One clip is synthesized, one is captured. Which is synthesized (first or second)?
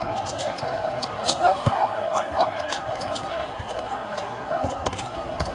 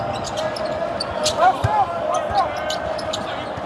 first